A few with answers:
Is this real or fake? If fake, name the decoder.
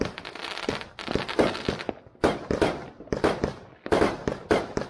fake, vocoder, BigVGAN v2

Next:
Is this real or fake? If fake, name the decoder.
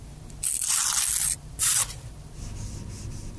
real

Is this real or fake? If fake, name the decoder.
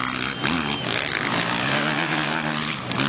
real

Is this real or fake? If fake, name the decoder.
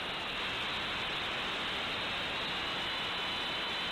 real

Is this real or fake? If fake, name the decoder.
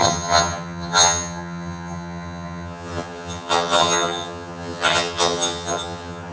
fake, vocoder, HiFi-GAN